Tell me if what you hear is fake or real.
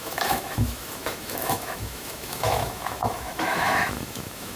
fake